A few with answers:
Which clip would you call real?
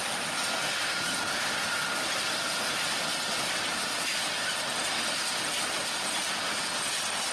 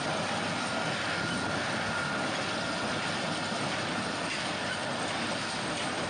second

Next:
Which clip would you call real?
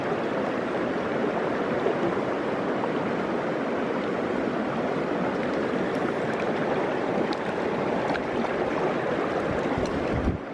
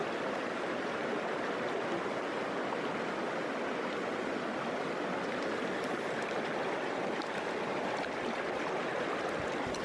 second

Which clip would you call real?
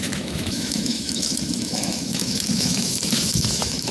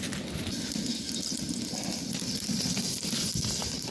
second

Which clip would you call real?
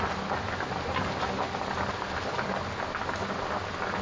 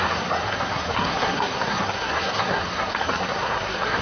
first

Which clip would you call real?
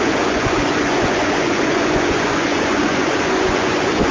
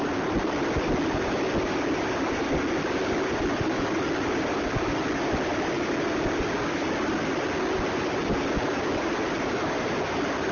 second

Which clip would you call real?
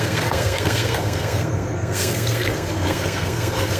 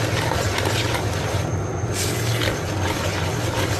second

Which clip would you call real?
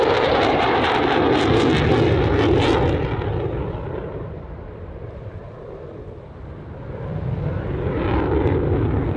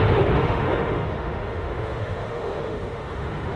first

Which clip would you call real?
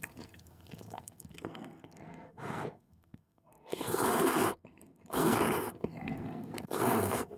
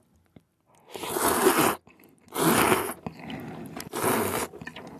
second